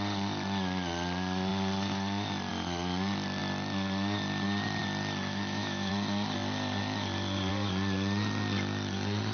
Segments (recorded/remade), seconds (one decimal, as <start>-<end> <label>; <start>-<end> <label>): 0.0-5.3 recorded; 5.3-5.9 remade; 5.9-9.3 recorded